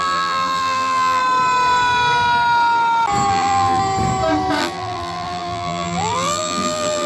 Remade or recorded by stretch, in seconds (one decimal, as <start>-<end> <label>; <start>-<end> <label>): 0.0-1.2 remade; 1.2-3.3 recorded; 3.3-3.8 remade; 3.8-4.6 recorded; 4.6-7.1 remade